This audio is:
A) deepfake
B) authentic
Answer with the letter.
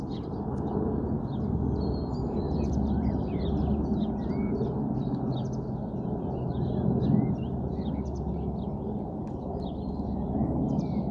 B